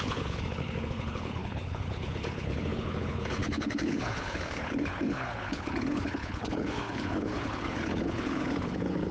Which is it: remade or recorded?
remade